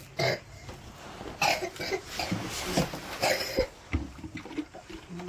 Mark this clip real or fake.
real